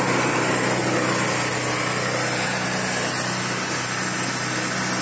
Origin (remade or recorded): recorded